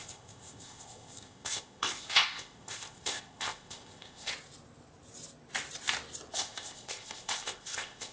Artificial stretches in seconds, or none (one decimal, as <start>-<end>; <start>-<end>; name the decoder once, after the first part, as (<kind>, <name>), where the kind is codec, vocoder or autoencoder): 0.0-4.3 (codec, ZipCodec); 6.3-8.1